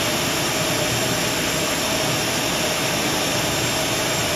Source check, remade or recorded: recorded